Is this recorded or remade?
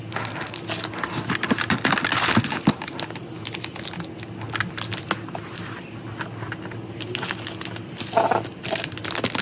recorded